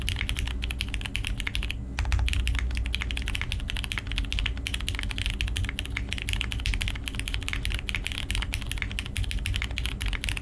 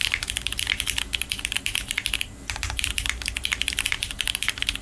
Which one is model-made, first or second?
second